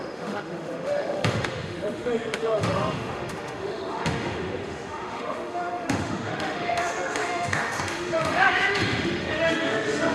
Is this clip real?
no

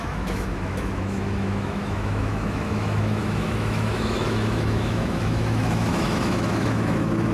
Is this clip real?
no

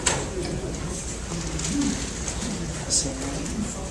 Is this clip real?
yes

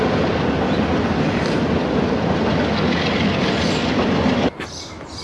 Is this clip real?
yes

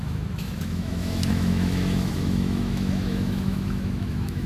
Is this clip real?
no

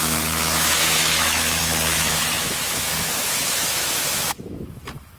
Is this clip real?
no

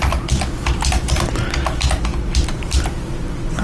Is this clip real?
yes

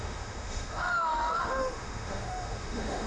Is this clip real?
no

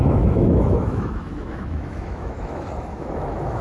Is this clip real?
no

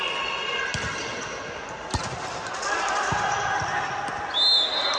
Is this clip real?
yes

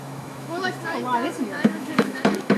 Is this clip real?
no